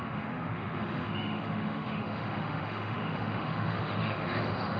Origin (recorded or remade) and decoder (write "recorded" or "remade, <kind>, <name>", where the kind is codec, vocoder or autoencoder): remade, autoencoder, DAC-VAE